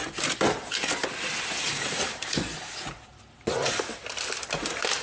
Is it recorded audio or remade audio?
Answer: recorded